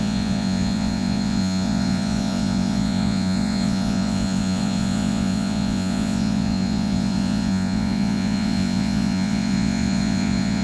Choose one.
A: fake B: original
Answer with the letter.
A